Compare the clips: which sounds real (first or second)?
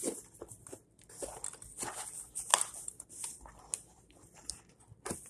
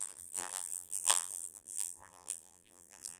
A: first